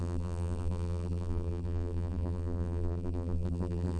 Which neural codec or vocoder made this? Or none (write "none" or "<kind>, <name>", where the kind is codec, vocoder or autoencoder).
vocoder, BigVGAN v2